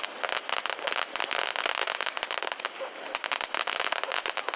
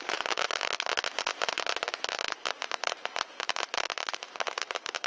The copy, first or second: second